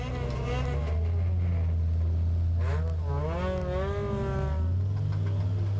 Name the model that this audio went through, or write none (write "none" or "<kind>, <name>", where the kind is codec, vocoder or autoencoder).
none